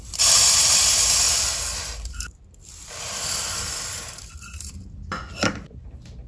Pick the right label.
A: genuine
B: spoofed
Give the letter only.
B